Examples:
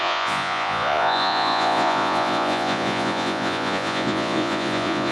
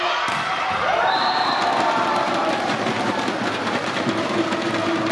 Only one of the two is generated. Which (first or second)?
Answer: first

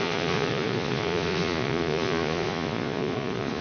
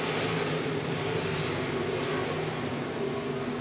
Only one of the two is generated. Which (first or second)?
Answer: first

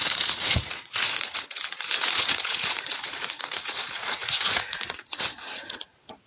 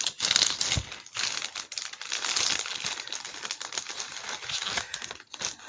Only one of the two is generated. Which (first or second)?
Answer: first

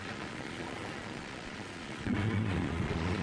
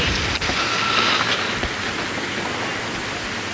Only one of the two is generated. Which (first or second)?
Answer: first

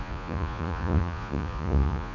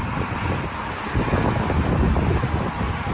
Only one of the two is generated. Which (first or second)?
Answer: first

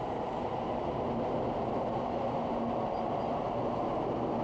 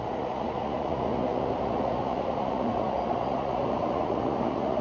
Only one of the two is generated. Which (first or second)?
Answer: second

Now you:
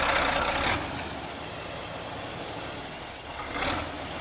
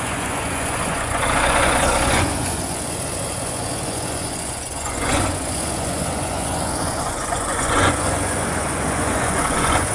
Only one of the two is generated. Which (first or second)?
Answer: second